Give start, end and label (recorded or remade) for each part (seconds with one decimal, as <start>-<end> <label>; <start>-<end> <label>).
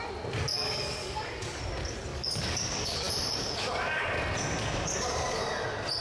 0.0-0.5 recorded; 0.5-1.6 remade; 1.6-2.1 recorded; 2.1-4.0 remade; 4.0-4.9 recorded; 4.9-5.4 remade; 5.4-6.0 recorded